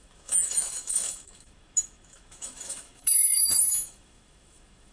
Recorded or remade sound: remade